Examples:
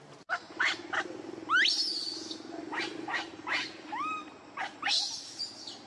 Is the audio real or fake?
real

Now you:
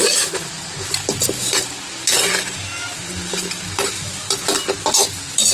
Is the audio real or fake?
real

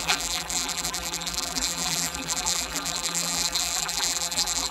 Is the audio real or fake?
fake